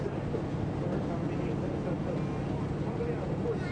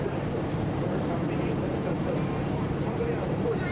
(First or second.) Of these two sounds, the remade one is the second